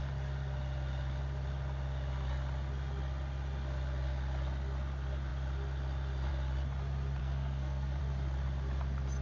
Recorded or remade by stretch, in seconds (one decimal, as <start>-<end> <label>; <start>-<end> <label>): 0.0-7.2 recorded; 7.2-8.0 remade; 8.0-9.2 recorded